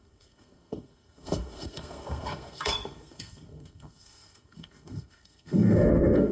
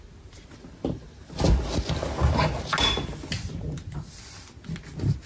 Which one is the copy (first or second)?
first